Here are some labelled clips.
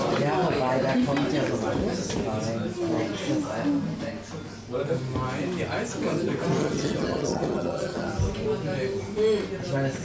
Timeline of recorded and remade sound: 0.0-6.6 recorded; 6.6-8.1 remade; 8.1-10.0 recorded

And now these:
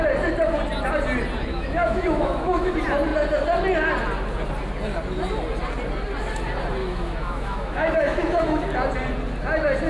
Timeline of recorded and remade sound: 0.0-1.5 recorded; 1.5-2.7 remade; 2.7-6.8 recorded; 6.8-8.6 remade; 8.6-9.9 recorded

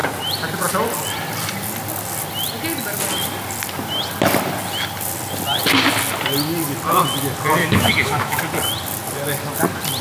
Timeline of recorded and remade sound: 0.0-7.6 recorded; 7.6-8.4 remade; 8.4-10.0 recorded

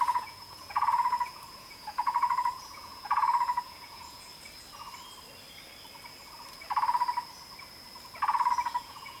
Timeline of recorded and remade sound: 0.0-4.3 remade; 4.3-8.5 recorded; 8.5-9.2 remade